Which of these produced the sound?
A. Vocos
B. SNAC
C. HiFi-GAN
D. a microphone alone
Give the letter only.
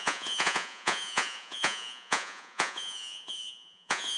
A